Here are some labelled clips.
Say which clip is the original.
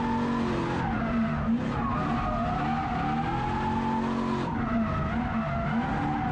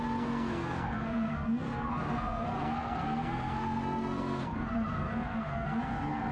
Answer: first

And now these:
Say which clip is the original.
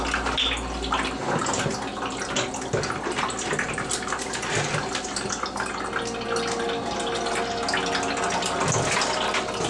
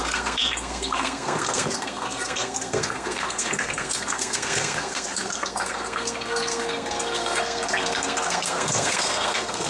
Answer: first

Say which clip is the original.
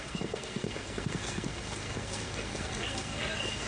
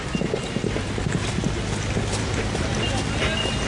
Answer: second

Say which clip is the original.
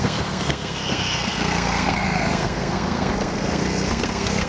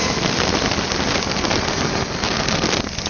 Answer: second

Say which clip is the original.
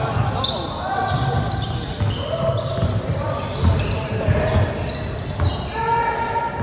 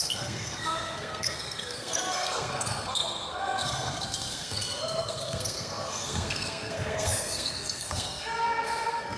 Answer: first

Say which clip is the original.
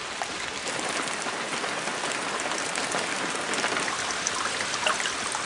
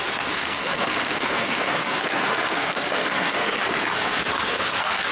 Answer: first